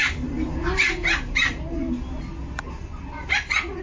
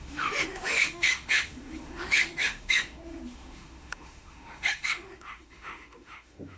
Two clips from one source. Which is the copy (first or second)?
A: second